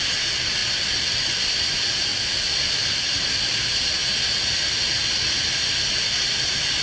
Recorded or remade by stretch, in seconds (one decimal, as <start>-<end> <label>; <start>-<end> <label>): 0.0-6.8 recorded